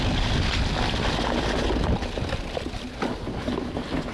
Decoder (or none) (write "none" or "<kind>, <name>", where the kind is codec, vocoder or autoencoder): none